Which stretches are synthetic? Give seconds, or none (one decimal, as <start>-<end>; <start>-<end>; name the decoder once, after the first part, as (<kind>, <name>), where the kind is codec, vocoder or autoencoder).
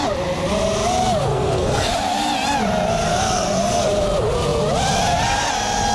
1.3-1.9 (codec, SNAC); 3.1-3.9